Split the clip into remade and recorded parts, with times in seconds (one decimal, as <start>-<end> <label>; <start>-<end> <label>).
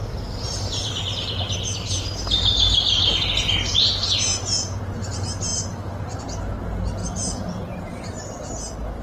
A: 0.0-4.3 recorded; 4.3-4.8 remade; 4.8-7.0 recorded; 7.0-8.0 remade; 8.0-9.0 recorded